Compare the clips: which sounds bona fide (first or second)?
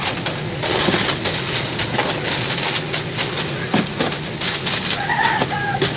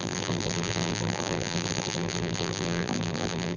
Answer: first